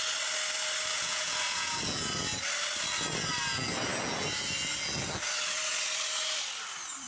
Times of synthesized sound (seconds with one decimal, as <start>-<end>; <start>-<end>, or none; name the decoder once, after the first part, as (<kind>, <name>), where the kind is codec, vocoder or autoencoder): 0.9-1.8 (vocoder, Vocos)